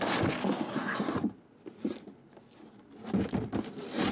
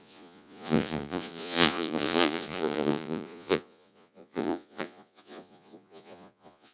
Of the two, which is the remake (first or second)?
second